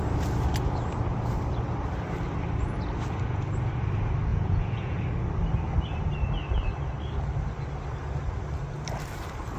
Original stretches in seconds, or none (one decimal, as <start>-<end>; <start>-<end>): 0.0-4.3; 5.0-9.6